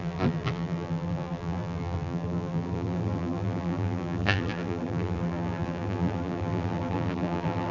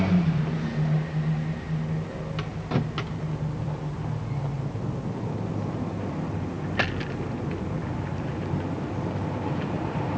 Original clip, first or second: second